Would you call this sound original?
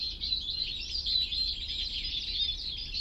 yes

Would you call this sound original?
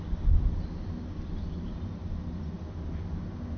yes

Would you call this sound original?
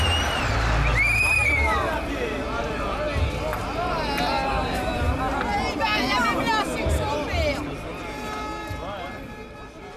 yes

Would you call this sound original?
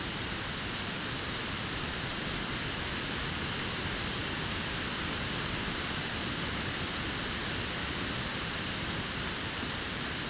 no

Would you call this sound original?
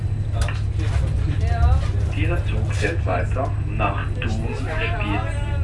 yes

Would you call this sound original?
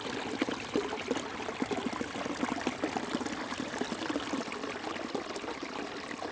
yes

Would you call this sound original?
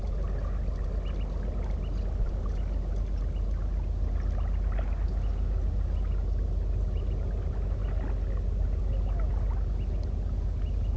yes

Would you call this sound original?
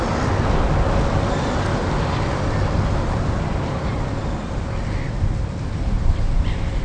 yes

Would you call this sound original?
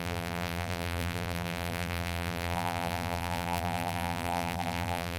no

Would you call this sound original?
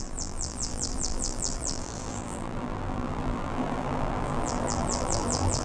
no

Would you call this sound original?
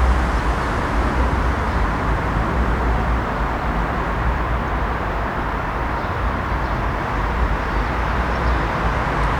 yes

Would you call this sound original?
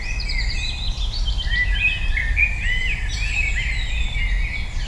yes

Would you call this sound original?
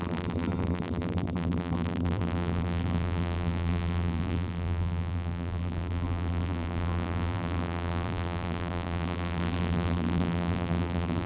no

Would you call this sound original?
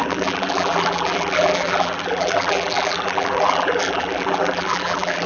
no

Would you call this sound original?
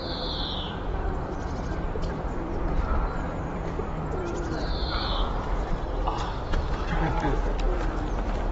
no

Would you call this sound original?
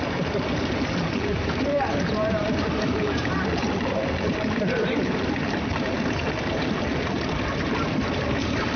no